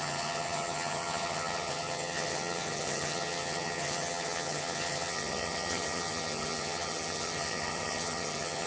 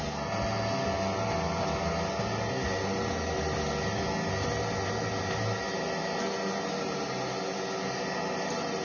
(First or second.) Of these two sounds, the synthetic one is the first